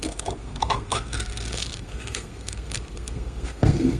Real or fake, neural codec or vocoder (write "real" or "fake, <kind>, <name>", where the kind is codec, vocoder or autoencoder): fake, codec, SNAC